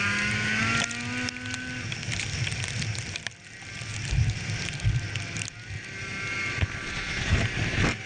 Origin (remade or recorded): recorded